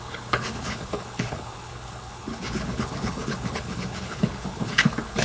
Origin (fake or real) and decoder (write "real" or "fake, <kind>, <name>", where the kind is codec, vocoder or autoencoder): fake, codec, HILCodec